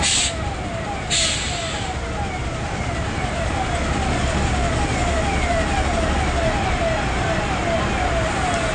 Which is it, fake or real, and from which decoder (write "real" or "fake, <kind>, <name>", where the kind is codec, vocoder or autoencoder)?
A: real